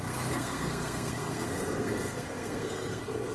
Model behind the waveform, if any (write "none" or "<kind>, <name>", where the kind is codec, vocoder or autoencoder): codec, SNAC